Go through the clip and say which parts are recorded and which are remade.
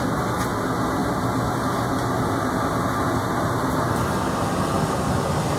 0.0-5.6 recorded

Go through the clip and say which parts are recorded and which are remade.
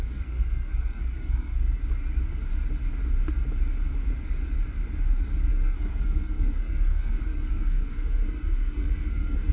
0.0-1.8 remade; 1.8-5.5 recorded; 5.5-9.5 remade